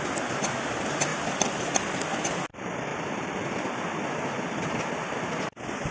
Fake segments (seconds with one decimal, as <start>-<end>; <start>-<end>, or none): 1.1-2.3; 2.9-3.5